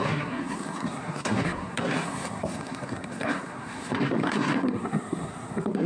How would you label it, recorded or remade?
remade